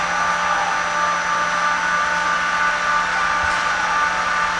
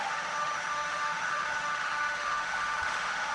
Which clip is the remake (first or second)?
second